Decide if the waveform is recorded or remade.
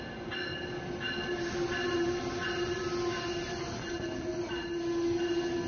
recorded